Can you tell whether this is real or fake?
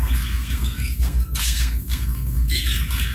fake